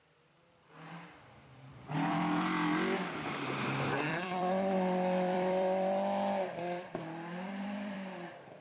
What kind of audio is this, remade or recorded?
remade